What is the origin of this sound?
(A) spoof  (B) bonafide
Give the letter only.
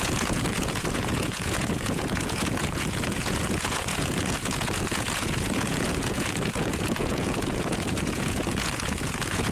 A